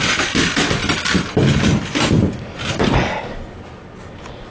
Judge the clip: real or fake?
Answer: real